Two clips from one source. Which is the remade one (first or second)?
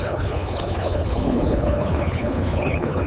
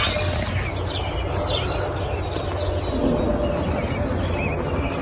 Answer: first